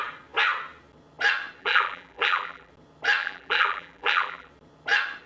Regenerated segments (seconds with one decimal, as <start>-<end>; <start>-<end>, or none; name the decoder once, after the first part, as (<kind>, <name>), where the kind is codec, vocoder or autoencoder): 1.6-2.7 (vocoder, BigVGAN v2); 3.2-4.5